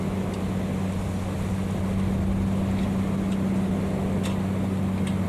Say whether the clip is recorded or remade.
recorded